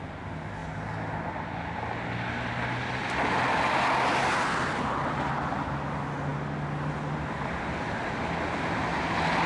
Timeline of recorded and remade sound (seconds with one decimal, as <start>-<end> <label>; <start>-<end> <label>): 0.0-3.0 recorded; 3.0-5.3 remade; 5.3-9.5 recorded